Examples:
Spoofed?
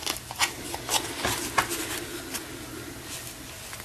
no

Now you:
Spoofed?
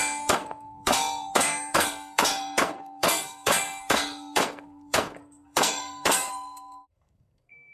yes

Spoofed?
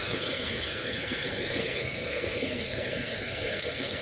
yes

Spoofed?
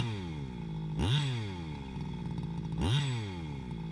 no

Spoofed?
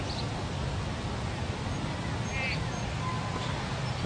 no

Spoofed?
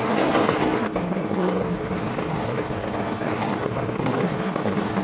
yes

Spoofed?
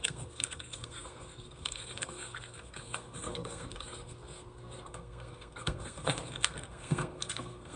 yes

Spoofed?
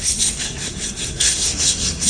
yes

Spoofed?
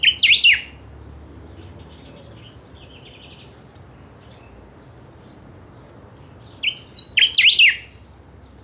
no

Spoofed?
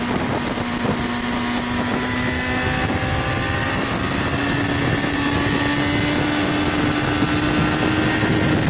no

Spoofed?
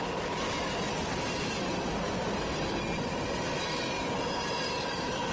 no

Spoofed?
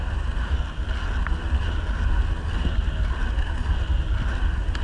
no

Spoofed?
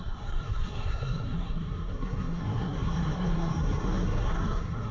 yes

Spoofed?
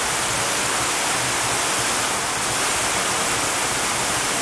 no